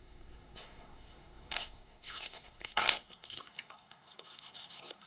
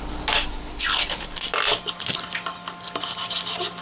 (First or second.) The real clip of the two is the second